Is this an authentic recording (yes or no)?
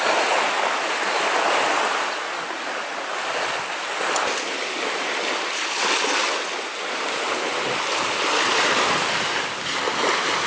yes